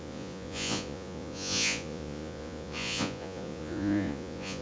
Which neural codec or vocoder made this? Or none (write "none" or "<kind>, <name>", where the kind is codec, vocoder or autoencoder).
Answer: vocoder, Vocos